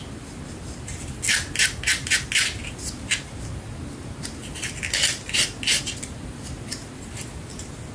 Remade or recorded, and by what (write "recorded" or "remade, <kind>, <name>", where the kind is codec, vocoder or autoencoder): recorded